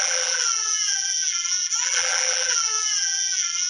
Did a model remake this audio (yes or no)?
yes